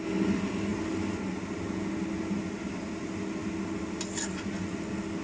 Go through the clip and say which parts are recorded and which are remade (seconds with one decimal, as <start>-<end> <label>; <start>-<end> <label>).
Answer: 0.0-5.2 recorded